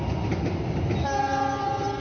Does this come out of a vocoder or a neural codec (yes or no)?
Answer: no